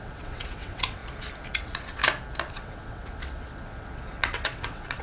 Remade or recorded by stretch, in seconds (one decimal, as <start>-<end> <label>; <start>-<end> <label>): 0.0-1.0 remade; 1.0-1.6 recorded; 1.6-2.0 remade; 2.0-2.5 recorded; 2.5-5.0 remade